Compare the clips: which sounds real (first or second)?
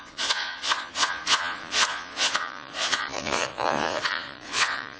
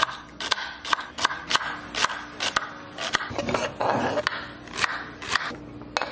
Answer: second